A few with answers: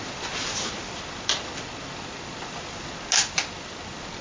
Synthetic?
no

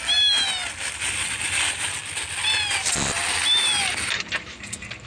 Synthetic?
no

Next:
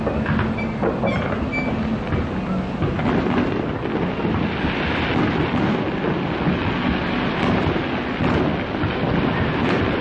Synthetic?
no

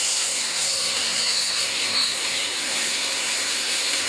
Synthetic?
yes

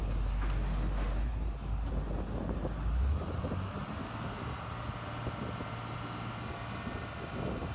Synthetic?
no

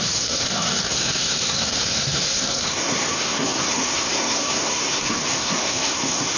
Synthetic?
yes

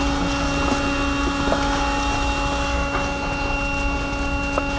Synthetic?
no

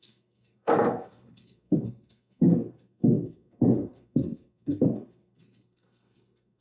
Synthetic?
yes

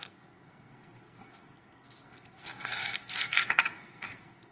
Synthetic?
yes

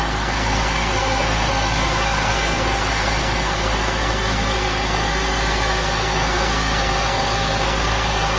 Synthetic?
yes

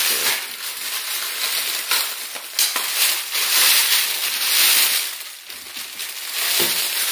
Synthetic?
no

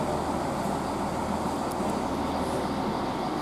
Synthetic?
no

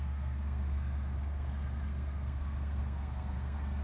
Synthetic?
yes